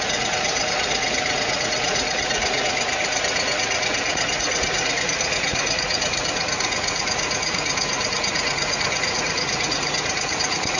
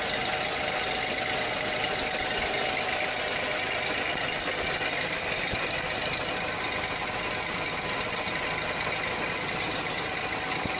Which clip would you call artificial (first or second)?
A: first